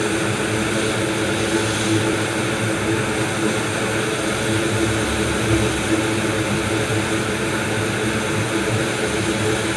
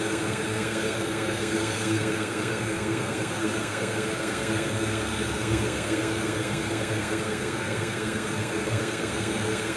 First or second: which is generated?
second